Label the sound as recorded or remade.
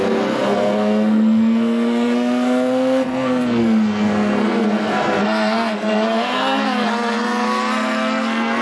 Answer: remade